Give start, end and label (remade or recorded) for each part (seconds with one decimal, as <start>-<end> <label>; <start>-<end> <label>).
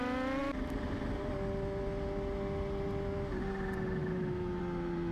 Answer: 0.0-4.0 recorded; 4.0-4.6 remade; 4.6-5.1 recorded